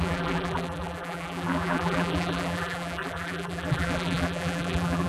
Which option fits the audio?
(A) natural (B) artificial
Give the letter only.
B